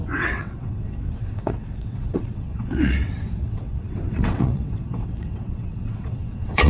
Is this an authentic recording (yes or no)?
no